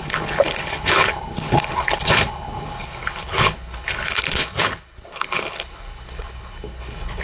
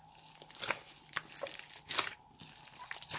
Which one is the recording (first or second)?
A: second